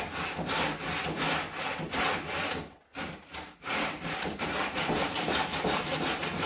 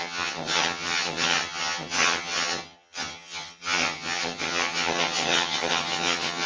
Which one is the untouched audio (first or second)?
first